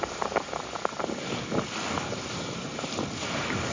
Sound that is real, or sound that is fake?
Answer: real